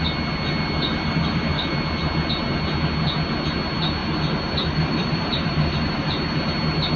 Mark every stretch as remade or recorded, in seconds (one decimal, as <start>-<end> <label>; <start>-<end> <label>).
0.0-0.9 recorded; 0.9-1.7 remade; 1.7-4.0 recorded; 4.0-6.5 remade; 6.5-7.0 recorded